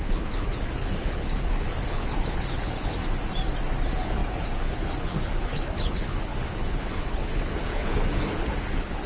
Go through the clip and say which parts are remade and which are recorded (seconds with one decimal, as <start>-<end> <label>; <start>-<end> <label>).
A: 0.0-3.0 remade; 3.0-3.8 recorded; 3.8-9.1 remade